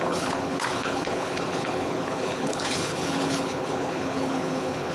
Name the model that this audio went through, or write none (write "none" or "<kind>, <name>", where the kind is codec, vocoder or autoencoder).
codec, HILCodec